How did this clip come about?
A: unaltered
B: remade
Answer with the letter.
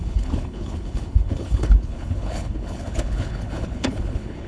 B